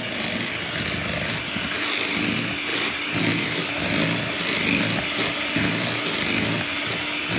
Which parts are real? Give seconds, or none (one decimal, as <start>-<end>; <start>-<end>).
0.0-7.4